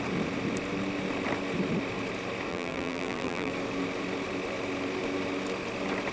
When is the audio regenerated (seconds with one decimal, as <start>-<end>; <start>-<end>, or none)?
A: 2.5-3.5

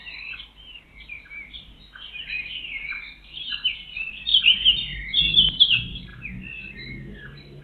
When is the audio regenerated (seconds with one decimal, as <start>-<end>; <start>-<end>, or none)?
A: 0.0-4.3; 5.5-6.1

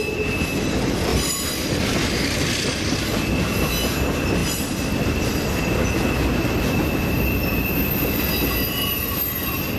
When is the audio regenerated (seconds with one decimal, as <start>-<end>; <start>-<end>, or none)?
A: 1.1-1.7; 4.4-5.6

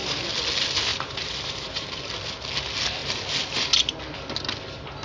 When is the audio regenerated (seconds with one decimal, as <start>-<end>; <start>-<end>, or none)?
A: 0.9-1.9

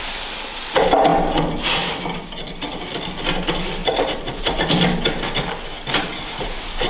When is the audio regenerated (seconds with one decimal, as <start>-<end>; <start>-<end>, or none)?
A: 3.8-4.4

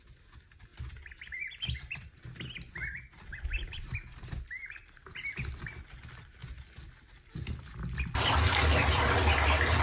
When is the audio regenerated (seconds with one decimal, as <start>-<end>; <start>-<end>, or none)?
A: none

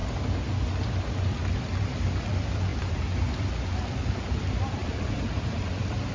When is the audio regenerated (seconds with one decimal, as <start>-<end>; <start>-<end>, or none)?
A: 1.8-6.1